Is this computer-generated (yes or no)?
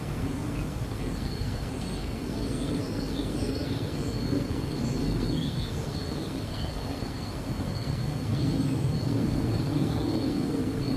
yes